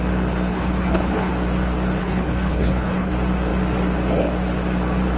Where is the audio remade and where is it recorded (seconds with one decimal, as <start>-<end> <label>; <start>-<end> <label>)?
0.0-0.5 recorded; 0.5-1.3 remade; 1.3-2.0 recorded; 2.0-3.1 remade; 3.1-5.2 recorded